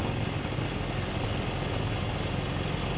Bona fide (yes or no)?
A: yes